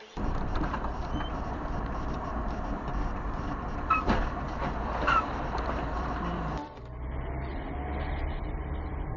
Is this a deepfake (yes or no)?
yes